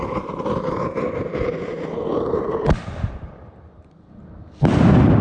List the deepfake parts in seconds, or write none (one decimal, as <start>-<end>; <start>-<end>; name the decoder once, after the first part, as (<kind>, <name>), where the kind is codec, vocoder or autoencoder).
none